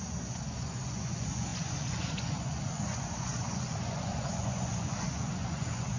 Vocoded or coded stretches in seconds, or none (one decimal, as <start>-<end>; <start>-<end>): 0.0-6.0